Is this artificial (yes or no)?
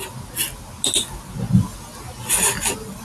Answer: no